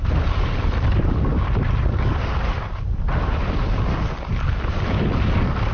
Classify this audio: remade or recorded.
recorded